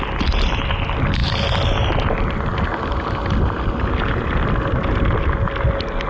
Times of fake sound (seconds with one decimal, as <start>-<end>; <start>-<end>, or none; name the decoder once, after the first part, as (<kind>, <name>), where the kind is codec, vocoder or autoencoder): none